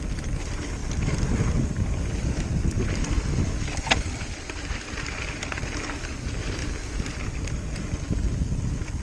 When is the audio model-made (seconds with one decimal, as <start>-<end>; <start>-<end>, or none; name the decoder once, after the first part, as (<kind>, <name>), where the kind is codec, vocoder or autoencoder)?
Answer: 0.8-6.0 (vocoder, BigVGAN v2); 6.6-7.7